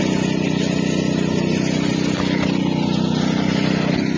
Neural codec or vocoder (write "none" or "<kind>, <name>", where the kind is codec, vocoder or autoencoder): none